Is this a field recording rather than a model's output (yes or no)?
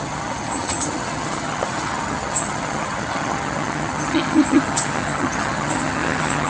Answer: no